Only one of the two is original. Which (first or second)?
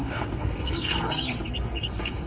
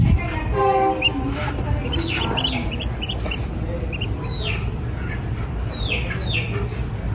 second